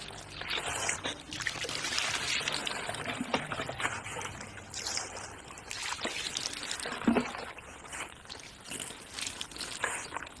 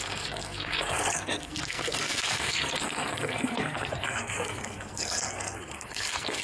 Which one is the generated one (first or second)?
second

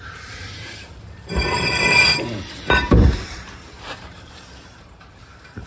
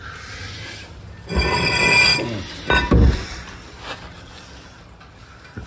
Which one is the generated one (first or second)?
first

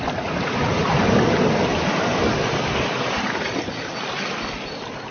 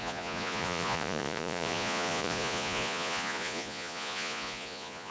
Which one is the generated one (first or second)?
second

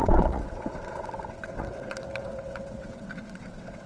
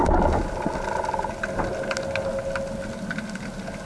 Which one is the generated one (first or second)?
first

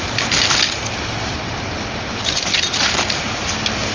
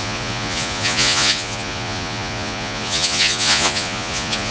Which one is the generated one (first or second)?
second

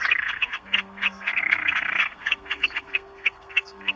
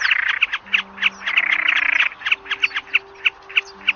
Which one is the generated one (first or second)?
first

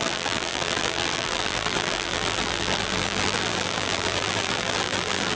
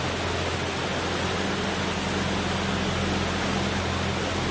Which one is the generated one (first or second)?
first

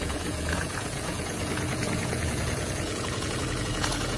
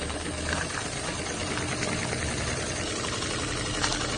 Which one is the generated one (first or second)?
first